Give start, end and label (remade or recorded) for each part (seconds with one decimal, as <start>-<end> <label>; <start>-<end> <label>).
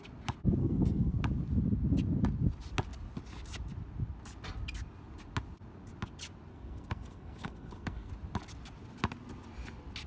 0.0-0.6 recorded; 0.6-1.2 remade; 1.2-6.5 recorded; 6.5-8.1 remade; 8.1-10.1 recorded